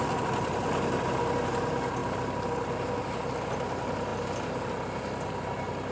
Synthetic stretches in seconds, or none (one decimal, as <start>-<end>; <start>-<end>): none